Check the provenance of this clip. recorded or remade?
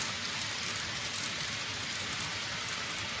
recorded